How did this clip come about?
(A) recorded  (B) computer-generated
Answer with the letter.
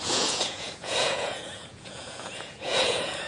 B